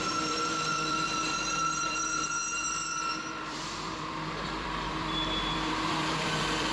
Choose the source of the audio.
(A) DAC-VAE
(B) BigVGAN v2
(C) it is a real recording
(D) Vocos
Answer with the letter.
B